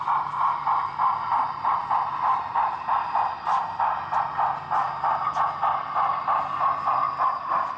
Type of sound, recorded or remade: recorded